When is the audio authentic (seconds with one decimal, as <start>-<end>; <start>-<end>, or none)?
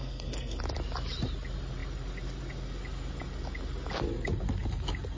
0.6-5.2